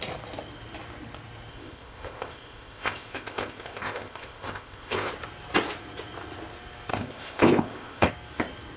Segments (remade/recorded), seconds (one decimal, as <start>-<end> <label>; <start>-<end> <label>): 0.0-1.5 recorded; 1.5-5.1 remade; 5.1-6.9 recorded; 6.9-8.1 remade; 8.1-8.8 recorded